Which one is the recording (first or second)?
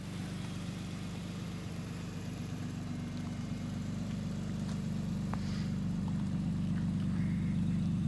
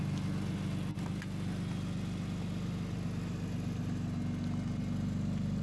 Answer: second